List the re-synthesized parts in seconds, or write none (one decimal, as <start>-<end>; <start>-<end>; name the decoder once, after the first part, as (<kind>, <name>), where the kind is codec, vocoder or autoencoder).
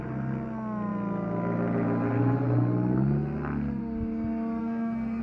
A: 4.6-5.2 (codec, SNAC)